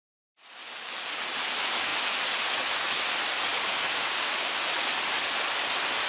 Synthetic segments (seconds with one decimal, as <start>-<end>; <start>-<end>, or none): 0.6-1.2; 3.5-4.6